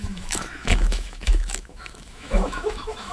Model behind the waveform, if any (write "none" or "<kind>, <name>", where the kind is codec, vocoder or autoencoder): autoencoder, DAC-VAE